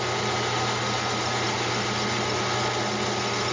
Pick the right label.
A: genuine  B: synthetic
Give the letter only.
A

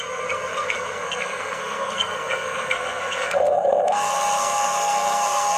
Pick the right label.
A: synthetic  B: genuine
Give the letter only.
A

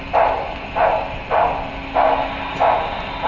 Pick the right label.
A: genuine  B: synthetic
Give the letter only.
A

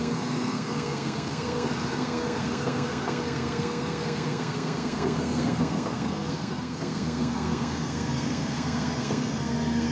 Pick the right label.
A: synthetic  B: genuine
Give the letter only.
A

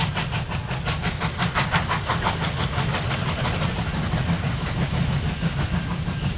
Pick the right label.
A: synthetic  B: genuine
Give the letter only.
B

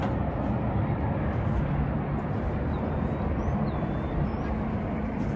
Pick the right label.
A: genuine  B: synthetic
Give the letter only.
A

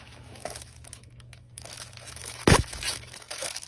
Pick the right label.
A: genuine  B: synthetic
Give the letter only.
B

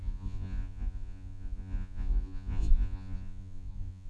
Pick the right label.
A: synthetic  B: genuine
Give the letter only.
A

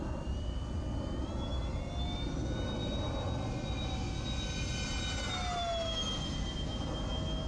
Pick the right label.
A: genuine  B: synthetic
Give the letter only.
A